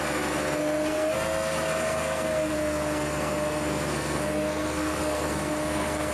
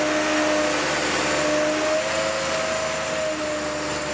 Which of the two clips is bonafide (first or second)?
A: second